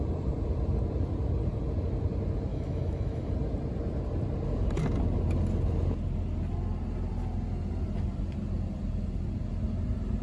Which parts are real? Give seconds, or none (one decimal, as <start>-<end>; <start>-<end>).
0.0-2.5; 3.3-10.2